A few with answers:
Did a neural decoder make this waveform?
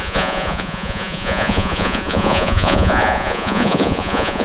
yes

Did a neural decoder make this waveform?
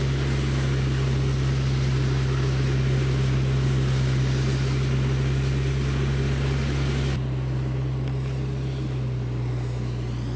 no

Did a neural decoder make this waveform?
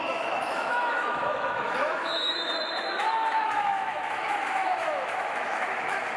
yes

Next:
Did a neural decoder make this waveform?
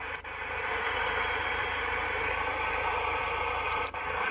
yes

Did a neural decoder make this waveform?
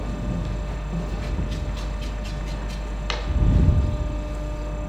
no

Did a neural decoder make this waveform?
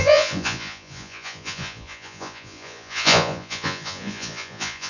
yes